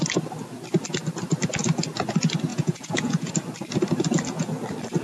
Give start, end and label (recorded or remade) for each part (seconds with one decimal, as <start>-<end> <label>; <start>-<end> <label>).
0.0-2.5 recorded; 2.5-3.3 remade; 3.3-5.0 recorded